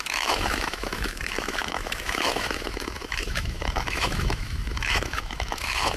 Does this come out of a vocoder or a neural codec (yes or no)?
yes